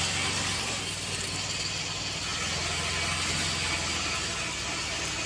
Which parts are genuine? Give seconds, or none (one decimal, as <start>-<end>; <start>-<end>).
0.0-5.3